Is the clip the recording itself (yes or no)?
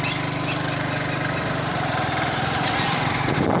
no